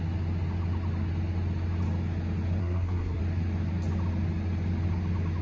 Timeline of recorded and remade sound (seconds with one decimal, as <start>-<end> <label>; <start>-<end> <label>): 0.0-2.6 recorded; 2.6-3.2 remade; 3.2-5.4 recorded